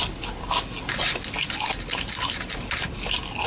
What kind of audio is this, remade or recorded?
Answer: recorded